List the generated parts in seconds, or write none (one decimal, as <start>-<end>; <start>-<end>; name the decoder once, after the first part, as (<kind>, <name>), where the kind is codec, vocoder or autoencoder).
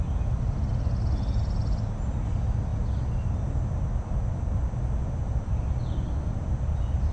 none